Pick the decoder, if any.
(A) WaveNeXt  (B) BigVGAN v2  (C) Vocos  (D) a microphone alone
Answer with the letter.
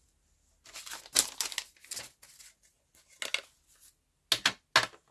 D